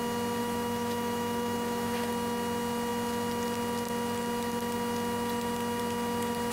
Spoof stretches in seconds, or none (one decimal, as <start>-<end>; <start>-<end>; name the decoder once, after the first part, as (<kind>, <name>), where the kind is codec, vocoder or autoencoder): 0.4-2.1 (autoencoder, DAC-VAE)

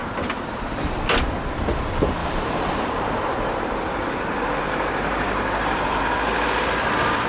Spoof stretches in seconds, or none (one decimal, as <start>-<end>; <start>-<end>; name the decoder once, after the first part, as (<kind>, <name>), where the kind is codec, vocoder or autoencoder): 0.0-0.8 (vocoder, BigVGAN v2); 2.2-6.0

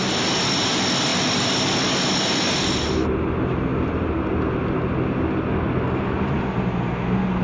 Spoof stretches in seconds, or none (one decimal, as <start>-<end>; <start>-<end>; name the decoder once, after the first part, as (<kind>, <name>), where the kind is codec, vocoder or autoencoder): none

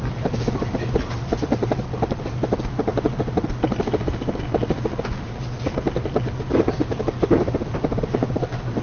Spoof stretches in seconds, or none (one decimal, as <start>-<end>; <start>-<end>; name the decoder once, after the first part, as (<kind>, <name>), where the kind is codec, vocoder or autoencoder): none

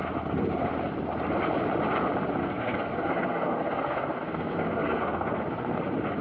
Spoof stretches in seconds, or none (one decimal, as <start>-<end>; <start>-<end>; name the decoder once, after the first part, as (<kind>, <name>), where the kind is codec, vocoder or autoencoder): 2.4-5.8 (codec, SNAC)

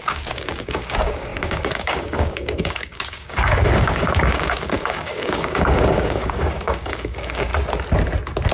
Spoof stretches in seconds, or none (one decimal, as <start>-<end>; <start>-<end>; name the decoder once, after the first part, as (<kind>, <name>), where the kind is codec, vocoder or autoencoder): 0.0-7.5 (codec, DAC)

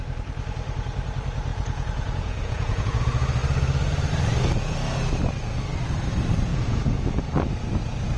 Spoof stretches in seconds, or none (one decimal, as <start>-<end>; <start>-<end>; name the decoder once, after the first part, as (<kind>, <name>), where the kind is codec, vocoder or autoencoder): 1.5-3.0 (vocoder, Vocos); 6.5-7.2